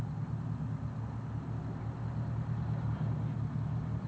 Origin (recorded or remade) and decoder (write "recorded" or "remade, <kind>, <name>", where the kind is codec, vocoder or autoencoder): recorded